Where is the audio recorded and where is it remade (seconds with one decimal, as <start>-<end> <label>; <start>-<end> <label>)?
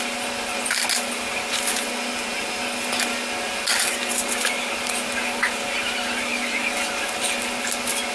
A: 0.0-8.1 recorded